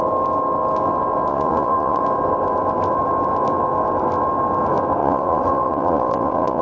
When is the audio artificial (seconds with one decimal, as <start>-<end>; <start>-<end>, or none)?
1.3-2.0; 5.0-6.6